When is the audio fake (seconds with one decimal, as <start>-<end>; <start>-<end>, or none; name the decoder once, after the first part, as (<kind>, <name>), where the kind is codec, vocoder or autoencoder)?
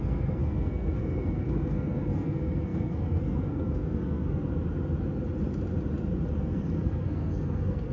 0.0-4.4 (codec, SNAC); 6.4-7.9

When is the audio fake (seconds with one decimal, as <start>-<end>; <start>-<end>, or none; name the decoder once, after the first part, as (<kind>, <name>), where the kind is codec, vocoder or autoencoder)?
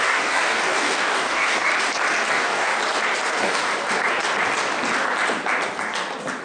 0.0-1.7 (codec, DAC); 2.3-2.7; 3.3-3.7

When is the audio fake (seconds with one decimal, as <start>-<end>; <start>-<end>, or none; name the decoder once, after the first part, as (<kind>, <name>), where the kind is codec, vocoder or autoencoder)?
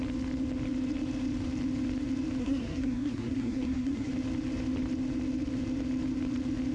2.4-4.1 (codec, SNAC)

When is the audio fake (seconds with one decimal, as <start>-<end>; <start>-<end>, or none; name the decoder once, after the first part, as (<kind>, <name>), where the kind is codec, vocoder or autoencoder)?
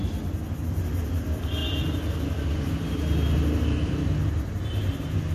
none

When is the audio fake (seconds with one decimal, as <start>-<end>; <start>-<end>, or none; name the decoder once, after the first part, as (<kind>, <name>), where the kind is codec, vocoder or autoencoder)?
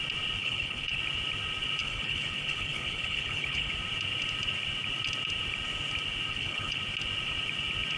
0.4-1.0 (codec, HILCodec); 1.8-3.7; 6.3-6.8